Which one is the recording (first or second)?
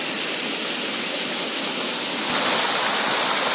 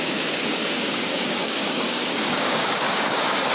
first